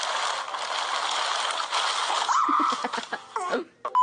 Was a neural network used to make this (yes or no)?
no